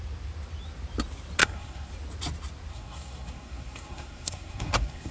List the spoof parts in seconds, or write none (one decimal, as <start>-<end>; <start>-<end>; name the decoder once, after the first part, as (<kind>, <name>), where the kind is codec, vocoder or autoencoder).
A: 1.4-1.9 (codec, SNAC); 2.7-5.1